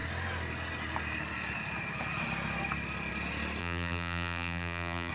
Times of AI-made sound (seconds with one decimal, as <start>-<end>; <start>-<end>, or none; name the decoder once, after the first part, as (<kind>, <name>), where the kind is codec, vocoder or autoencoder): 3.6-5.1 (vocoder, BigVGAN v2)